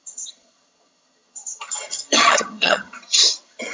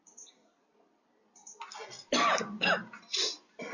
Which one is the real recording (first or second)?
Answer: second